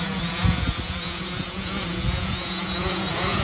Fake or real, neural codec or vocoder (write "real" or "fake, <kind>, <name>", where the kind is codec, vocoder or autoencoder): fake, vocoder, Vocos